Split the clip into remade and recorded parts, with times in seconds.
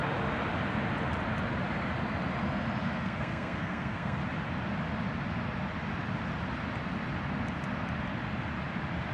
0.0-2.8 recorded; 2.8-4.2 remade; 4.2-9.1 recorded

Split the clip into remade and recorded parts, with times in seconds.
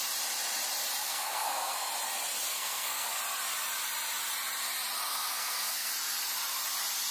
0.0-1.0 recorded; 1.0-1.9 remade; 1.9-2.5 recorded; 2.5-3.2 remade; 3.2-5.1 recorded; 5.1-5.9 remade; 5.9-7.1 recorded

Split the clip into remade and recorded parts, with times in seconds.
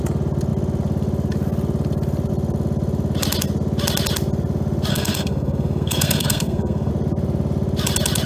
0.0-4.9 recorded; 4.9-6.9 remade; 6.9-8.3 recorded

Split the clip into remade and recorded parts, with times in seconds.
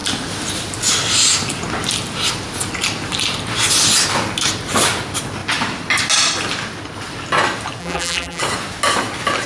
0.0-7.8 recorded; 7.8-8.4 remade; 8.4-9.5 recorded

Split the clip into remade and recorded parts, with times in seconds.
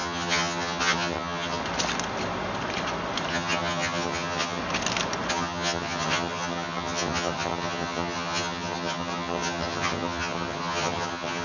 0.0-1.6 remade; 1.6-3.3 recorded; 3.3-4.6 remade; 4.6-5.3 recorded; 5.3-11.4 remade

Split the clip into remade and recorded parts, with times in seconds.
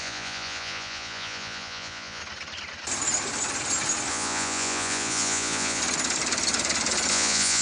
0.0-2.2 remade; 2.2-4.1 recorded; 4.1-5.8 remade; 5.8-7.1 recorded; 7.1-7.6 remade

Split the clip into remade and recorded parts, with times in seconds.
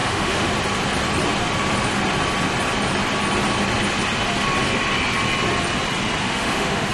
0.0-0.5 remade; 0.5-6.2 recorded; 6.2-6.9 remade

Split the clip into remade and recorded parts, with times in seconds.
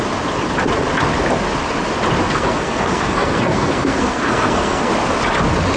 0.0-2.2 recorded; 2.2-4.9 remade; 4.9-5.8 recorded